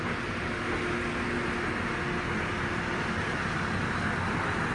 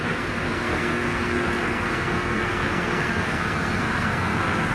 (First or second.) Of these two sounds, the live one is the first